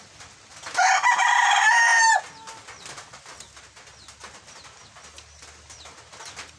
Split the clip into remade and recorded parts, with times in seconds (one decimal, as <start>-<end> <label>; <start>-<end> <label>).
0.0-6.6 recorded